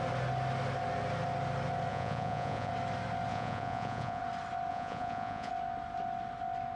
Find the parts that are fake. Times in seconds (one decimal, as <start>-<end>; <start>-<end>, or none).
1.9-2.7; 3.3-4.2; 4.7-5.5